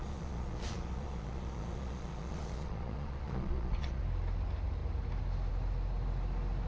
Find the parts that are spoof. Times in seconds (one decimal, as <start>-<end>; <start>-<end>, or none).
0.0-4.0